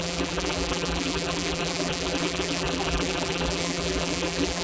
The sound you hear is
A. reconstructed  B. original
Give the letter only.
A